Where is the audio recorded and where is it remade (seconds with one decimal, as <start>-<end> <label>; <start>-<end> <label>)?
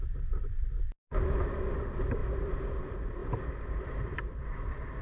0.0-2.2 recorded; 2.2-2.8 remade; 2.8-3.2 recorded; 3.2-4.3 remade; 4.3-5.0 recorded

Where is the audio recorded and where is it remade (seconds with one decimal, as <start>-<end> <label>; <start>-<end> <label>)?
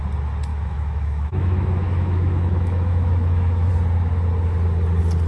0.0-0.5 recorded; 0.5-3.7 remade; 3.7-5.3 recorded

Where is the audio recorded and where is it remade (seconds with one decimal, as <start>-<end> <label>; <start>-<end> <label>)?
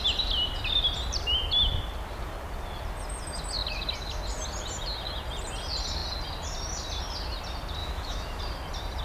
0.0-7.8 recorded; 7.8-8.4 remade; 8.4-9.0 recorded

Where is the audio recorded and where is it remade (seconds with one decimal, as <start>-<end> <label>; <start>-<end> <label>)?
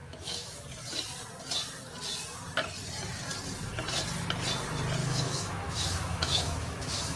0.0-0.6 remade; 0.6-5.0 recorded; 5.0-7.2 remade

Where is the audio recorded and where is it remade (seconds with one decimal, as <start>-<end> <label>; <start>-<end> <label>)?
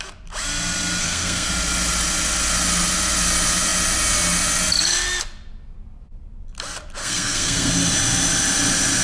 0.0-1.0 recorded; 1.0-1.5 remade; 1.5-7.0 recorded; 7.0-7.7 remade; 7.7-9.0 recorded